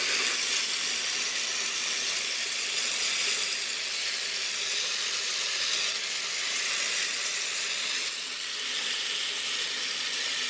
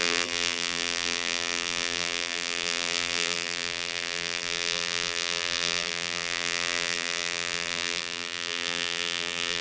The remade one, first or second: second